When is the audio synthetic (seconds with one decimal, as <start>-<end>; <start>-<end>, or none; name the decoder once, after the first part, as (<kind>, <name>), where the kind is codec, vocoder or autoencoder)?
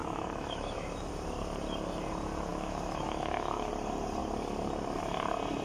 0.0-1.1 (autoencoder, DAC-VAE); 2.5-3.7